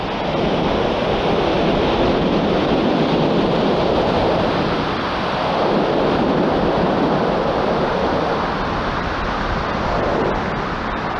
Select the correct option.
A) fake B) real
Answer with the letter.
B